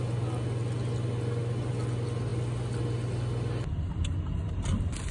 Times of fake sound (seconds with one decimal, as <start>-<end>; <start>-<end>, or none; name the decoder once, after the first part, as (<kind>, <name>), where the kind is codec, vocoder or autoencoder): none